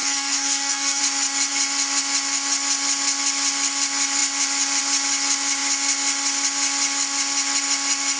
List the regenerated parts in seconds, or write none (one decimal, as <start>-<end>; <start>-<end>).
0.0-1.0